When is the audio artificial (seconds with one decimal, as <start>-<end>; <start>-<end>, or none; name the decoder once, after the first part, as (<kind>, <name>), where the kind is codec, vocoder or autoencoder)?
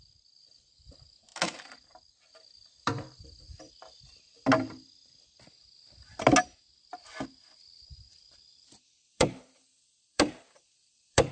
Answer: 8.1-11.3 (vocoder, BigVGAN v2)